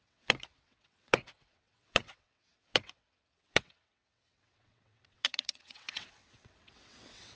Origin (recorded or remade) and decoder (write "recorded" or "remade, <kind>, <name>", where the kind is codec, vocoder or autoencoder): remade, vocoder, WaveNeXt